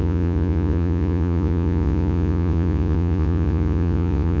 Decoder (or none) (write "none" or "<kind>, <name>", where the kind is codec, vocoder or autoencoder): vocoder, Vocos